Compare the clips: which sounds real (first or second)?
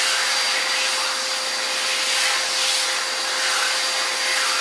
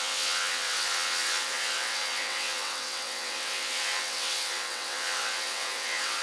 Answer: first